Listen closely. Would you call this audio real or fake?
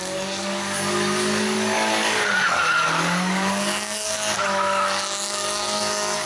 fake